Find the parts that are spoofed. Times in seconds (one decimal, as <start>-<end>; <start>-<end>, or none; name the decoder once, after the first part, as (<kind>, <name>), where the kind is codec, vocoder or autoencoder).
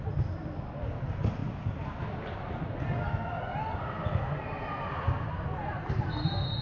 1.4-2.6 (vocoder, BigVGAN v2)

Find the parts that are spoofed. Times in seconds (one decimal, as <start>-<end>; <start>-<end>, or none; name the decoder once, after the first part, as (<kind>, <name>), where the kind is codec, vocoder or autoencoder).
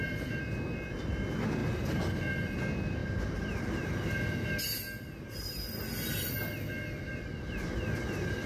1.6-2.6 (vocoder, BigVGAN v2)